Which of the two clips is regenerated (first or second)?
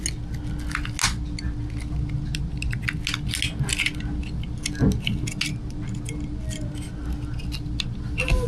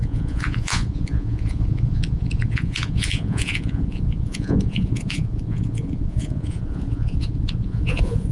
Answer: second